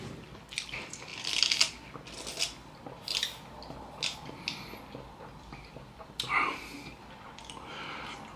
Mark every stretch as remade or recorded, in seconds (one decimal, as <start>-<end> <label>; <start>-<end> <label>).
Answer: 0.0-8.4 recorded